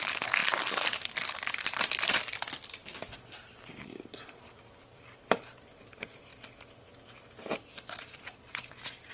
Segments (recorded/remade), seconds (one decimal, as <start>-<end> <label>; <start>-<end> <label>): 0.0-0.4 remade; 0.4-1.1 recorded; 1.1-6.3 remade; 6.3-7.6 recorded; 7.6-9.1 remade